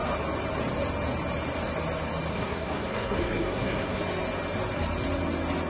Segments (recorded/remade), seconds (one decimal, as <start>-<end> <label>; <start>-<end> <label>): 0.0-2.3 recorded; 2.3-4.0 remade; 4.0-5.7 recorded